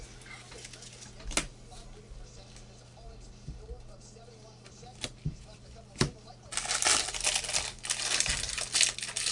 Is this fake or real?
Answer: real